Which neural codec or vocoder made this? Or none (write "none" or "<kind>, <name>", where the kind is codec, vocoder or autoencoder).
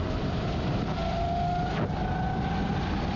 none